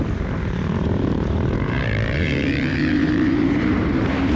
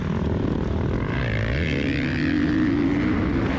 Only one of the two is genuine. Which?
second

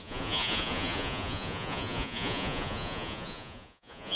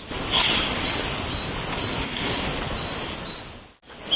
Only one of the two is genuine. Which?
second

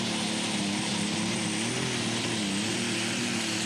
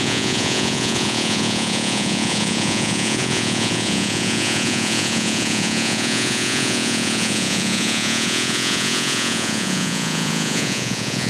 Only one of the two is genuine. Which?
first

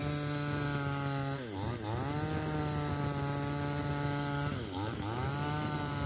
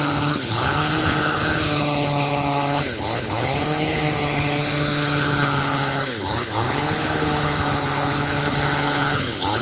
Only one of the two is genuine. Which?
first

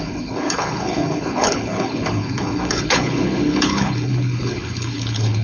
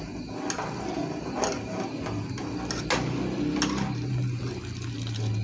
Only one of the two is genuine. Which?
second